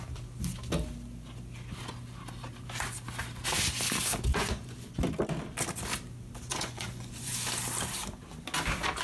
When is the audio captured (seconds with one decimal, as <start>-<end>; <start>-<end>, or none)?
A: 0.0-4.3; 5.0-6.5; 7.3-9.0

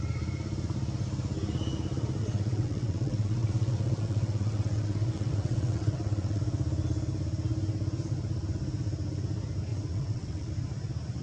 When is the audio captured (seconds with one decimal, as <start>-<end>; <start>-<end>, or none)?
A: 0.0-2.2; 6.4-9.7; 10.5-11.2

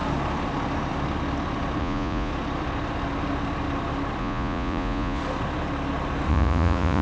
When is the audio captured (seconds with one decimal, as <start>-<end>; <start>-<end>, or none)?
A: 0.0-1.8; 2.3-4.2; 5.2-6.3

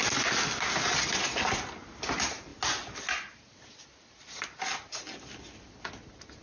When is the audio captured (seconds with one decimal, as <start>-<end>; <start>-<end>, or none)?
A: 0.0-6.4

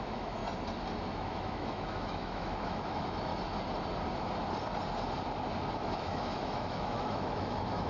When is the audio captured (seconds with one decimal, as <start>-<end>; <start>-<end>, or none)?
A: 0.4-1.0; 3.3-5.7

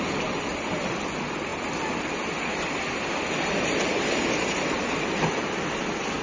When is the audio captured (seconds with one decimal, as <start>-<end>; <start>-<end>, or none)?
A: 0.0-6.2